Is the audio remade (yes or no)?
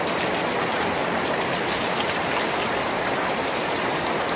no